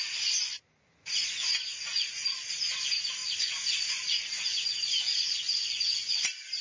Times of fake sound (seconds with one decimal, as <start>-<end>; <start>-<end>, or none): none